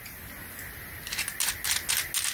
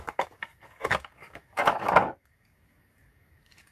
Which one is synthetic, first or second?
second